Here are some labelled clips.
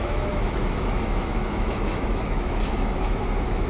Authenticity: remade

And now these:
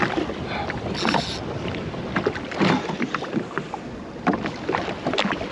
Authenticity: recorded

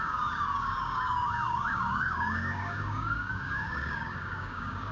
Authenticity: remade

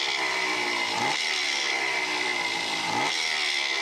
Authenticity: remade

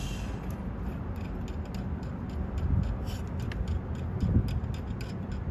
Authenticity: recorded